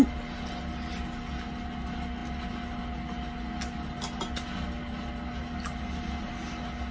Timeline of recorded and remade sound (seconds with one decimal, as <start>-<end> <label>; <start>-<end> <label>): 0.0-6.9 recorded